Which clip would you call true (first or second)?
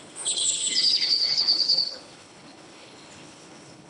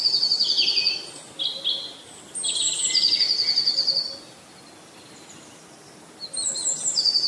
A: second